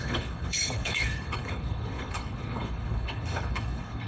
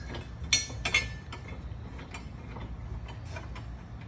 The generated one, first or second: first